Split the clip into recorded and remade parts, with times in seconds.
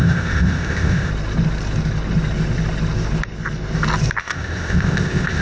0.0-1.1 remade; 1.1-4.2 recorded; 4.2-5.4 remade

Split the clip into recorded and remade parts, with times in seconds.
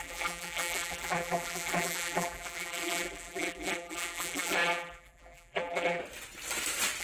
0.0-6.0 remade; 6.0-7.0 recorded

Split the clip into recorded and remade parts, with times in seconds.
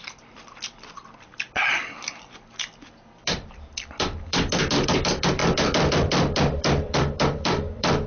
0.0-1.7 remade; 1.7-2.2 recorded; 2.2-8.1 remade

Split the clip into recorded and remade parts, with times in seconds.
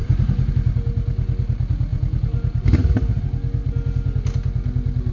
0.0-0.5 remade; 0.5-1.9 recorded; 1.9-3.2 remade; 3.2-5.1 recorded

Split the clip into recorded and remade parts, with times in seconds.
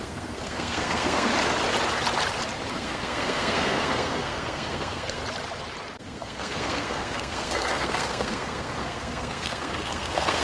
0.0-1.3 remade; 1.3-2.7 recorded; 2.7-5.2 remade; 5.2-6.0 recorded; 6.0-10.4 remade